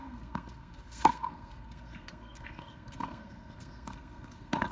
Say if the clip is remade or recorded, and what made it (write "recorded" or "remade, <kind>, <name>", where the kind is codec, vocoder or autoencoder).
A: remade, codec, SNAC